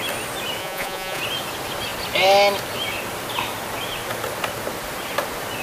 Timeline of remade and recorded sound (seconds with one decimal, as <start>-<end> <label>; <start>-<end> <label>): 0.0-0.6 recorded; 0.6-1.2 remade; 1.2-5.6 recorded